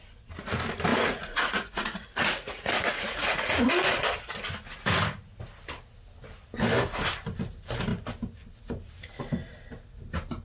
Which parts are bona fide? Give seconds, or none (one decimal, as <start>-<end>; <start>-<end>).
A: 0.0-0.9; 3.7-10.4